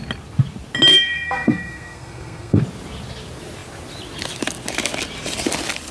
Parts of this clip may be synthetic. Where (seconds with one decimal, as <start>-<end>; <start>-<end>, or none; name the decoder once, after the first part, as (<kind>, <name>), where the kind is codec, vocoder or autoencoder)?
0.9-2.6 (codec, SNAC)